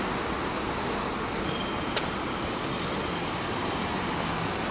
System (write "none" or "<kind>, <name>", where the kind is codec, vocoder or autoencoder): none